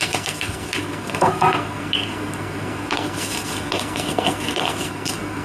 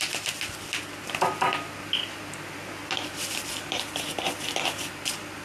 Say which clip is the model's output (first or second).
first